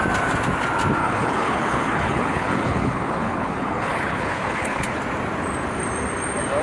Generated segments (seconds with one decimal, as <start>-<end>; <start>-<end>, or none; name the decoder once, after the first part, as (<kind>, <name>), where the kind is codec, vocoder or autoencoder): 1.0-5.0 (codec, HILCodec)